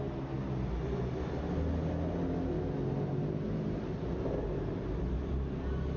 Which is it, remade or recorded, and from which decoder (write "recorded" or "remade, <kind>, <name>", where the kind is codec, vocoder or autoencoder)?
recorded